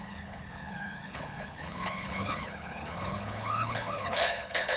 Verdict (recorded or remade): remade